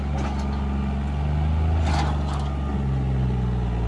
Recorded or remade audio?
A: recorded